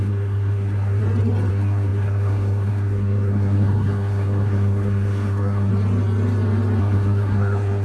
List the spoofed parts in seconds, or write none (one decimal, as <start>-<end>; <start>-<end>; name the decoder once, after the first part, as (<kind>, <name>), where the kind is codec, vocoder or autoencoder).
0.0-1.0 (codec, SNAC); 1.5-5.7; 6.8-7.8